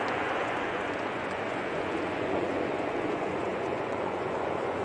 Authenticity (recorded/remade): remade